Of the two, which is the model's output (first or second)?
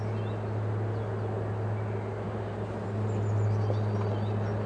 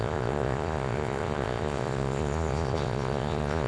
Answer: second